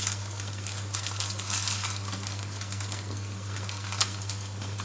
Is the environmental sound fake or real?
fake